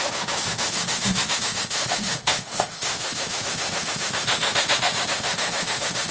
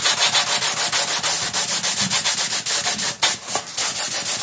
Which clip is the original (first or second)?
second